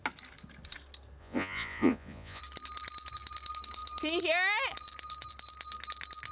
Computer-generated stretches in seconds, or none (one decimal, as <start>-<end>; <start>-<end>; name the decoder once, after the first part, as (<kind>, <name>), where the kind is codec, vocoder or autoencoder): 1.2-2.4 (vocoder, Vocos)